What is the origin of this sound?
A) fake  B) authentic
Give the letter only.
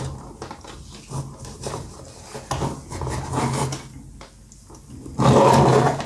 B